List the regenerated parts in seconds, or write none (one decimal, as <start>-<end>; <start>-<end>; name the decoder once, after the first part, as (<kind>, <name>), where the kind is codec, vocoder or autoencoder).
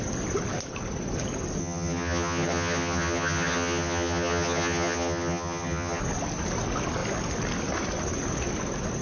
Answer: 1.6-6.0 (vocoder, HiFi-GAN)